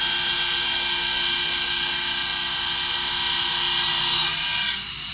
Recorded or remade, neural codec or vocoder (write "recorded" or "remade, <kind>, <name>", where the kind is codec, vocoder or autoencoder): recorded